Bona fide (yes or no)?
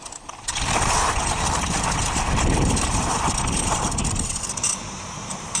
no